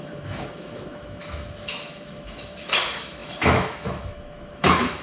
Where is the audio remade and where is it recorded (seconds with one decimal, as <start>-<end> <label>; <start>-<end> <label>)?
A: 0.0-5.0 remade